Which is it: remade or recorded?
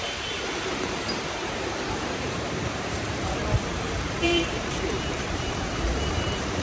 remade